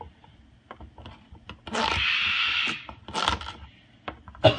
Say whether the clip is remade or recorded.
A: recorded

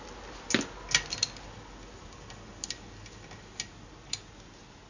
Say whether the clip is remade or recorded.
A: recorded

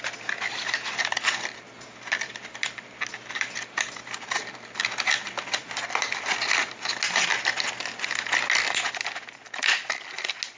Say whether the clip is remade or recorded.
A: recorded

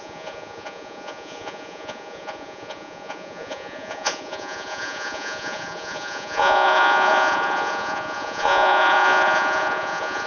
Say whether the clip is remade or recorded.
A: remade